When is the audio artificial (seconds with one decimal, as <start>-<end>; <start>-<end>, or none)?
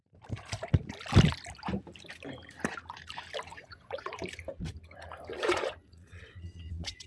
3.5-4.2; 5.3-7.1